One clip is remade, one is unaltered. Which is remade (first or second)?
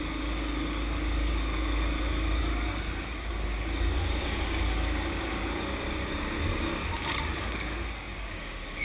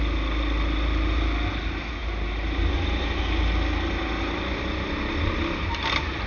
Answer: first